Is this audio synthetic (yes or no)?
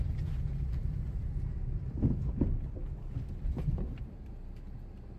no